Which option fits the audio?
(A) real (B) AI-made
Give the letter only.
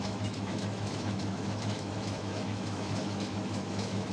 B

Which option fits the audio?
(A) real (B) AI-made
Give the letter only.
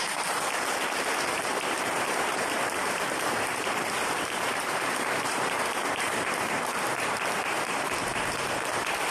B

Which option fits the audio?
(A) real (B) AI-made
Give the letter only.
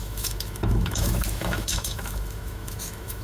B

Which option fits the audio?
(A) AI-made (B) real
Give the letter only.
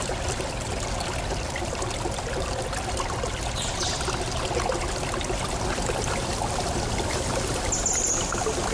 B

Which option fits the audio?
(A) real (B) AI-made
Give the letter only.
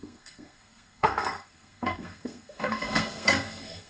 B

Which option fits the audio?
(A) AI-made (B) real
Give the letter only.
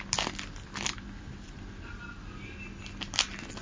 B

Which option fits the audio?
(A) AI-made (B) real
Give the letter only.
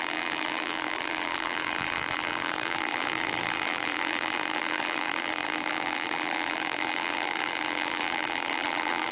A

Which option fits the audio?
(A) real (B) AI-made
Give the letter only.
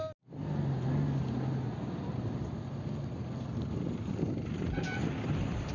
A